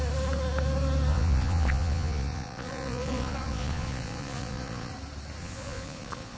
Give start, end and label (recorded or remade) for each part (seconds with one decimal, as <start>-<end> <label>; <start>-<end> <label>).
0.0-1.1 recorded; 1.1-4.9 remade; 4.9-5.4 recorded; 5.4-6.4 remade